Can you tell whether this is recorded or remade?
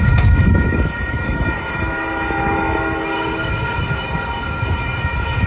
remade